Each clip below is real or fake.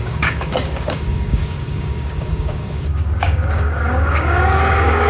fake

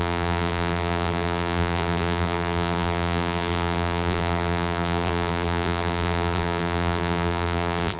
fake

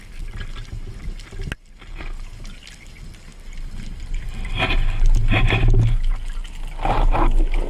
real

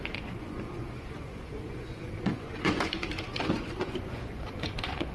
fake